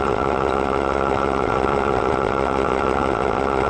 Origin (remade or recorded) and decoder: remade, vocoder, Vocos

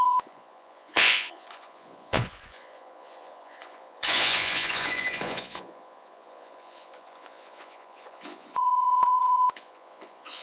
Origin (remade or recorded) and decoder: remade, vocoder, Vocos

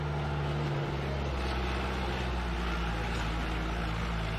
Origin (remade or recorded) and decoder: recorded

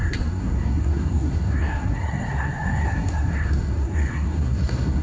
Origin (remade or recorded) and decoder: remade, codec, SNAC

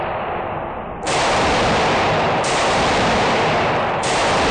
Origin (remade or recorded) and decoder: remade, vocoder, BigVGAN v2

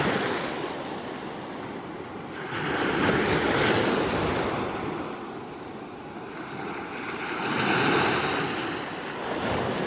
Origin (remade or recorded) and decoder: recorded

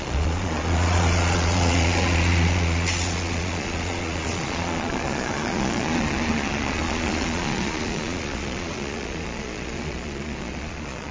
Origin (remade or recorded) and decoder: remade, vocoder, Vocos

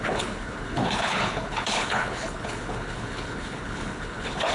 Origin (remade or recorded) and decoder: remade, codec, HILCodec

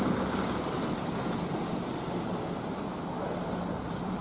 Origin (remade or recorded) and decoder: recorded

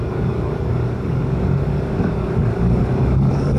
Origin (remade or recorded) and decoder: remade, codec, DAC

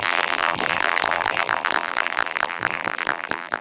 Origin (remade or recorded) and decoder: remade, vocoder, BigVGAN v2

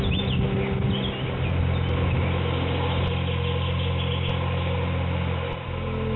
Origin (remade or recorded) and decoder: recorded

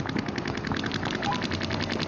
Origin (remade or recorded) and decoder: recorded